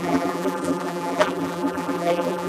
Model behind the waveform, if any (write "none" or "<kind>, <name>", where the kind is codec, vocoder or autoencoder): vocoder, BigVGAN v2